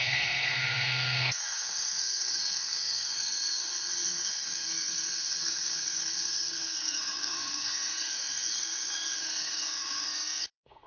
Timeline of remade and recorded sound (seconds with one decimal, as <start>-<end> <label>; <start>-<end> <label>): 0.0-10.9 remade

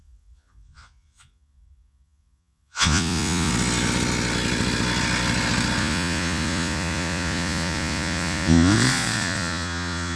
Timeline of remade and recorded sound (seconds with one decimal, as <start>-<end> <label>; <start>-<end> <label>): 0.0-3.5 remade; 3.5-5.8 recorded; 5.8-10.2 remade

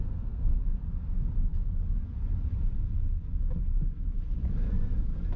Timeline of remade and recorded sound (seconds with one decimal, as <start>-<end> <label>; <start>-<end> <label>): 0.0-0.6 remade; 0.6-5.4 recorded

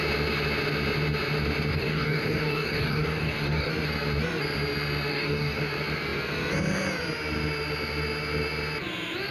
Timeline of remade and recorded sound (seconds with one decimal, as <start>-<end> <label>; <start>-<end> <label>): 0.0-1.7 recorded; 1.7-3.7 remade; 3.7-5.1 recorded; 5.1-5.6 remade; 5.6-9.3 recorded